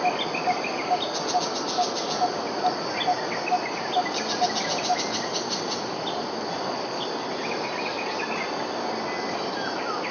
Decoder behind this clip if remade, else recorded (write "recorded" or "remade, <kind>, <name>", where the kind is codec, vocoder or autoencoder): recorded